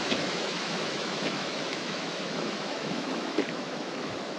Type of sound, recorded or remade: remade